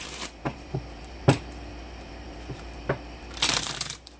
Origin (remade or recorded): remade